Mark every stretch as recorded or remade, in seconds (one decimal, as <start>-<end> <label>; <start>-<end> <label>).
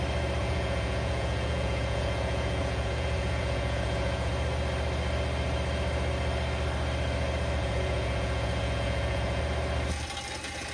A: 0.0-0.4 recorded; 0.4-4.3 remade; 4.3-7.6 recorded; 7.6-9.4 remade; 9.4-10.7 recorded